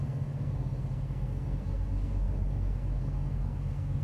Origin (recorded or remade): remade